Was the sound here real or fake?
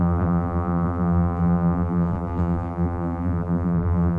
fake